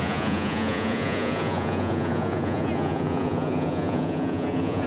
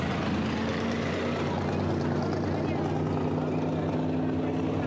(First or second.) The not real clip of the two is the first